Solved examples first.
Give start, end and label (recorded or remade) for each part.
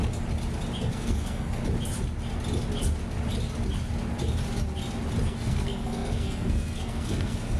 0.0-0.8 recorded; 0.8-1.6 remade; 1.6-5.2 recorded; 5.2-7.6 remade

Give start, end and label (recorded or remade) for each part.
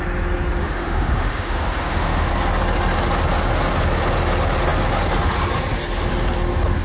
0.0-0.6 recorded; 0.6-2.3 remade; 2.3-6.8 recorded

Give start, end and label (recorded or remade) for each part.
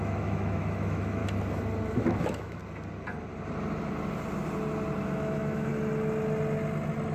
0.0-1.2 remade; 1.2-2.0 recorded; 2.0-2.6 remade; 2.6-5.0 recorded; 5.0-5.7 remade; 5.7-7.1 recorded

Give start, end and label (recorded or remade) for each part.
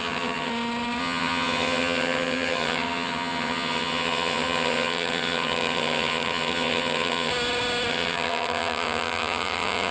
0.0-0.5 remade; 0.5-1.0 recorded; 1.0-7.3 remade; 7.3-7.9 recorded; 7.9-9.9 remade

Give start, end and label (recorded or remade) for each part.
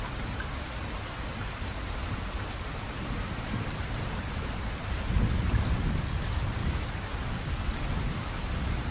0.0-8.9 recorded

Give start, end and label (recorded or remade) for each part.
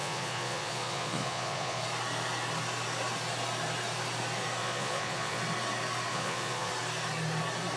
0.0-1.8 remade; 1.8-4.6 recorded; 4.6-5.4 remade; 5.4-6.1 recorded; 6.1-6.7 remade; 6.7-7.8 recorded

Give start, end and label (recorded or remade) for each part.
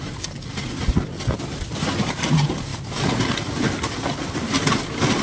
0.0-5.2 recorded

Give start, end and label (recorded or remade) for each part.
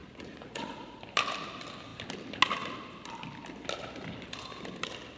0.0-1.0 remade; 1.0-5.2 recorded